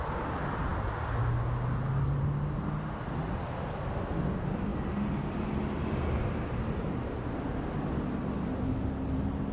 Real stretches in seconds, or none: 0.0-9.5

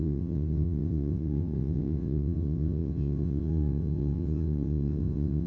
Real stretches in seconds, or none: none

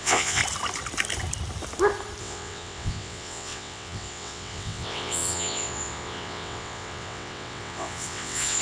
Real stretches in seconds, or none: 0.4-2.2

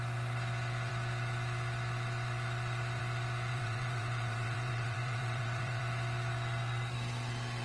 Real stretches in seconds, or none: 0.0-3.5; 5.8-7.6

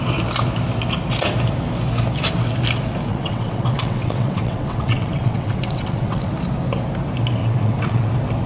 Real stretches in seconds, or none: 0.0-3.1; 6.3-7.4; 8.1-8.5

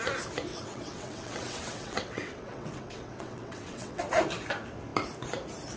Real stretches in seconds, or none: 0.0-0.5; 4.0-5.8

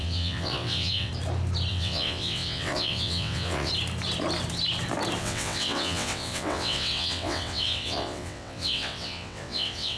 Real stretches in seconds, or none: 1.1-1.7; 3.7-5.2

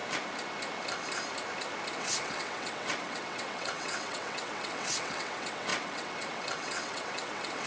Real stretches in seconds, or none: 0.0-2.0